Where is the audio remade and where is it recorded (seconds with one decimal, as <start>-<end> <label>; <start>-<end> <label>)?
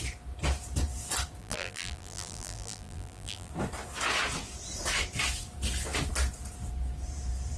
0.0-1.4 recorded; 1.4-3.5 remade; 3.5-7.6 recorded